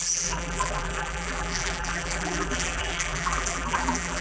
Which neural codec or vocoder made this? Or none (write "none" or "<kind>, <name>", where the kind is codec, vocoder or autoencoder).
vocoder, BigVGAN v2